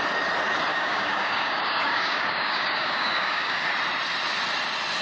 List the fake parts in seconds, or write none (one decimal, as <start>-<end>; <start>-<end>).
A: 0.7-3.7